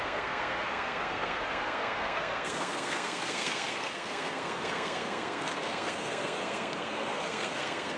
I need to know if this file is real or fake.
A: fake